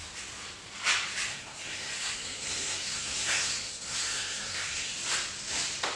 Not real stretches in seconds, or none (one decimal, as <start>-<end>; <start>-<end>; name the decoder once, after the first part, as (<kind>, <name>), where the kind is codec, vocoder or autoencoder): 1.3-4.9 (codec, SNAC)